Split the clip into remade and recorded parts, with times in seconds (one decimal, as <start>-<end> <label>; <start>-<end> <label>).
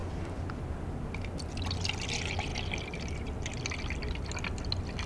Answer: 0.0-5.1 recorded